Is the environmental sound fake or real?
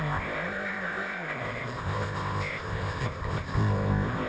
fake